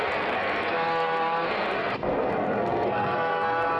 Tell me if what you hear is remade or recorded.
remade